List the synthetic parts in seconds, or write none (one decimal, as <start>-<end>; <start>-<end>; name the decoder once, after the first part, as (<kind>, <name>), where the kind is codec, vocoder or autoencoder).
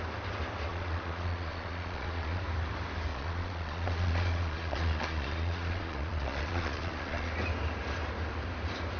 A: 0.7-2.4 (vocoder, Vocos); 3.1-7.3